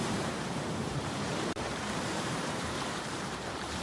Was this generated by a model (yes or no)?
yes